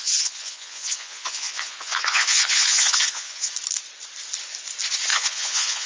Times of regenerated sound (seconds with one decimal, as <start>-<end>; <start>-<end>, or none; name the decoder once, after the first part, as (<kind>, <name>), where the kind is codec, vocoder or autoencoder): 0.0-3.5 (vocoder, Vocos); 5.1-5.9